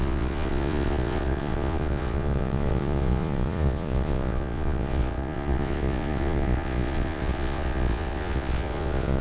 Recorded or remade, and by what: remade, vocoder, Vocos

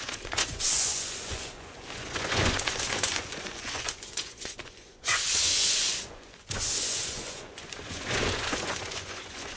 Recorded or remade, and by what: remade, vocoder, Vocos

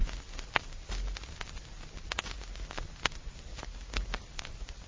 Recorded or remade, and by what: recorded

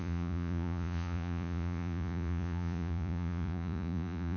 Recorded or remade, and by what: remade, vocoder, Vocos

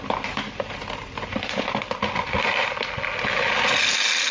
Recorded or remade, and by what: recorded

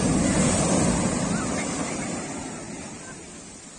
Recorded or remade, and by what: recorded